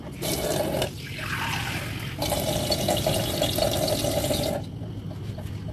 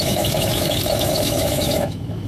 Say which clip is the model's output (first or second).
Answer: second